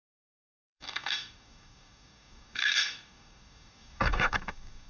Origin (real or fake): fake